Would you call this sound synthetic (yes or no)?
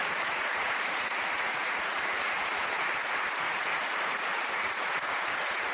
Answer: yes